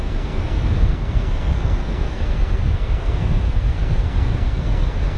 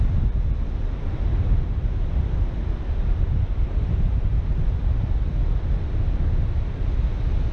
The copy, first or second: first